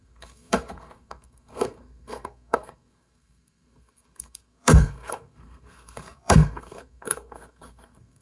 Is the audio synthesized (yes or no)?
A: yes